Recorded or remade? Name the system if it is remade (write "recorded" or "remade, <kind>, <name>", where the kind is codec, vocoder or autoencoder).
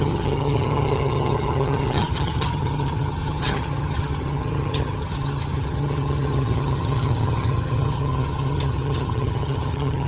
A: remade, vocoder, HiFi-GAN